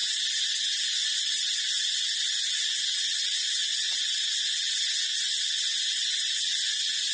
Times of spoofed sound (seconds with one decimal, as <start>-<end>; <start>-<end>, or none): none